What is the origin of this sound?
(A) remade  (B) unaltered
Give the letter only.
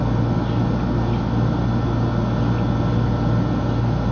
B